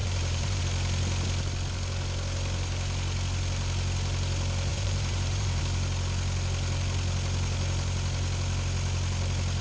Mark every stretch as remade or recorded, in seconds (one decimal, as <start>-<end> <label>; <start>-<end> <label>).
0.0-0.6 remade; 0.6-4.7 recorded; 4.7-5.6 remade; 5.6-9.6 recorded